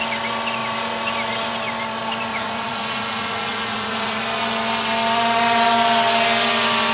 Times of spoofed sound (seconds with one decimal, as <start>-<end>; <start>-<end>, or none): 2.3-4.2